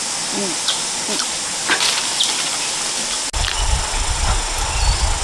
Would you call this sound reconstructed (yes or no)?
no